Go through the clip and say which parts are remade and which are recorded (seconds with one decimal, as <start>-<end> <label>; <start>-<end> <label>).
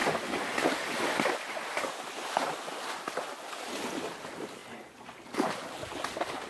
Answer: 0.0-6.5 recorded